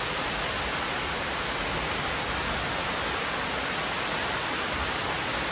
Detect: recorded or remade recorded